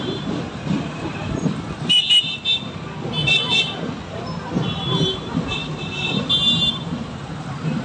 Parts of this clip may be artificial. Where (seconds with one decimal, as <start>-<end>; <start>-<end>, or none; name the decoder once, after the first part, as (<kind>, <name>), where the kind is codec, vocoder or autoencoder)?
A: 0.0-2.0 (vocoder, BigVGAN v2); 4.7-5.8; 6.7-7.8